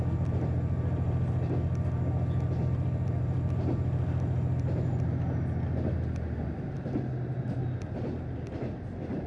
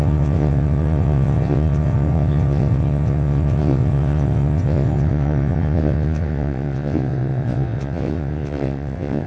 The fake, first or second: second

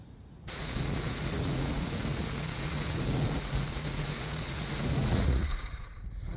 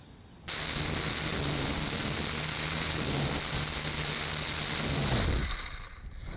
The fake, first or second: first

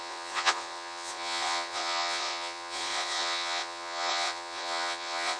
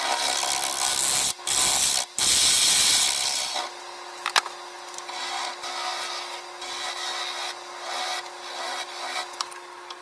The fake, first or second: first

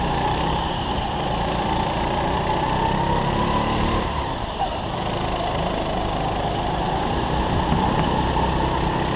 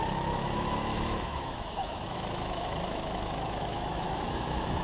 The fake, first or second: second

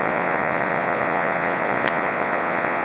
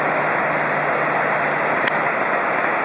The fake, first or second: first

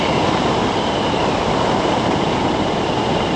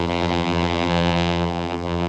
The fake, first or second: second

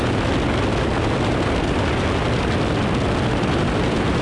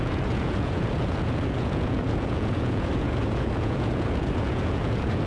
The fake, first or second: second